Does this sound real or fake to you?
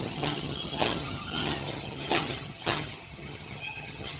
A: fake